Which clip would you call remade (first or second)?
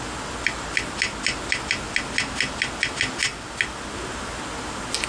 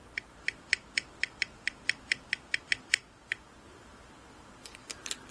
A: second